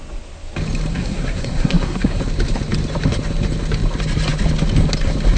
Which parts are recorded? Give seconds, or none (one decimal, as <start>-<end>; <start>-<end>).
0.0-0.9; 2.2-5.4